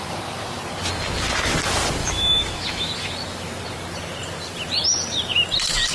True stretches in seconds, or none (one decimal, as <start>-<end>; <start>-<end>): 0.0-2.0; 3.6-5.9